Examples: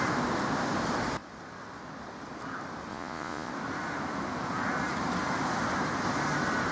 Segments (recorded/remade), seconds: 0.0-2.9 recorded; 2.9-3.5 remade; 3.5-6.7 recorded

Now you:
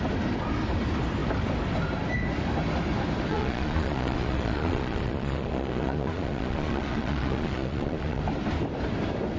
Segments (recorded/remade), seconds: 0.0-3.3 recorded; 3.3-8.2 remade; 8.2-9.4 recorded

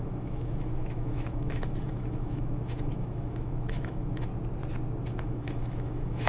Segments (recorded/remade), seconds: 0.0-4.3 remade; 4.3-5.0 recorded; 5.0-6.3 remade

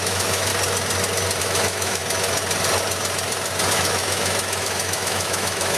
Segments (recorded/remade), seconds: 0.0-0.5 remade; 0.5-1.4 recorded; 1.4-2.0 remade; 2.0-3.7 recorded; 3.7-5.8 remade

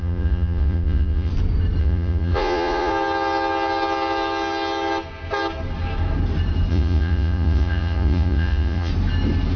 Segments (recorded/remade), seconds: 0.0-1.3 remade; 1.3-1.8 recorded; 1.8-2.9 remade; 2.9-6.7 recorded; 6.7-8.9 remade; 8.9-9.6 recorded

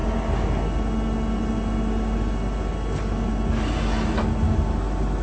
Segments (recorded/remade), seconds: 0.0-5.2 recorded

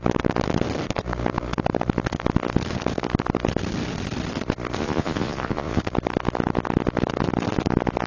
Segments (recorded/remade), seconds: 0.0-4.8 recorded; 4.8-5.8 remade; 5.8-8.1 recorded

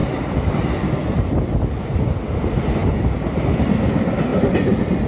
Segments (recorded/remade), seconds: 0.0-0.5 remade; 0.5-4.3 recorded; 4.3-5.1 remade